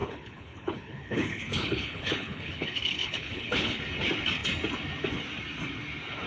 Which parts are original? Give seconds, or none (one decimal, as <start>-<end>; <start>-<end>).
3.8-6.3